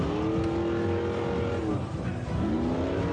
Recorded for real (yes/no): yes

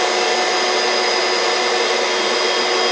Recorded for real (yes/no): yes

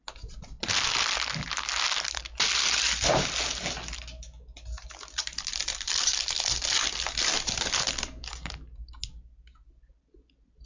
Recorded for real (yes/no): yes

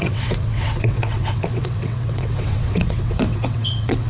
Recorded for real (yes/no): no